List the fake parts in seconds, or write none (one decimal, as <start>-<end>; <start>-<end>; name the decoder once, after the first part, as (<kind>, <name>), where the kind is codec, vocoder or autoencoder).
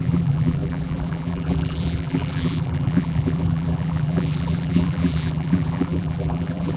0.0-6.8 (vocoder, BigVGAN v2)